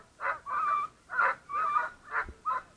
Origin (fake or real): fake